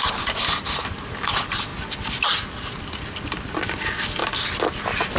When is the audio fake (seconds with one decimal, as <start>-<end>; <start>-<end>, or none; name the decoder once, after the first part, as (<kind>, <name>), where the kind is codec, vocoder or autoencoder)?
0.0-1.7 (vocoder, BigVGAN v2); 2.7-4.2; 4.8-5.2